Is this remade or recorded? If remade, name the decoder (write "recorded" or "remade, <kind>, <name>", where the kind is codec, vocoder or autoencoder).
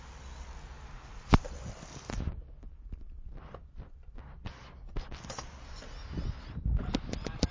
recorded